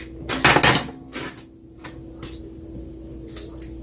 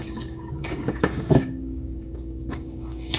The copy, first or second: second